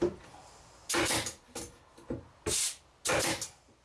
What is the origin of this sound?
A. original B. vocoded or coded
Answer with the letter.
A